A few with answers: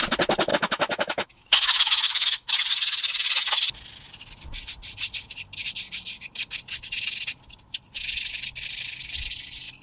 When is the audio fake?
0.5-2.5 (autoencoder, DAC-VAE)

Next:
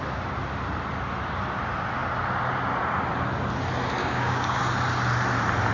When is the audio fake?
4.0-4.6 (codec, DAC)